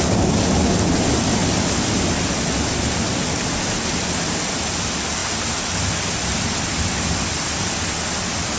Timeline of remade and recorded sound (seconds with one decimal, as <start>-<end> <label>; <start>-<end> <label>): 0.0-1.4 recorded; 1.4-4.6 remade; 4.6-5.2 recorded; 5.2-5.9 remade; 5.9-8.6 recorded